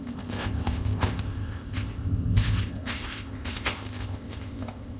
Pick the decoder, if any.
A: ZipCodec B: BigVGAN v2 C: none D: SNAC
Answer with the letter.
A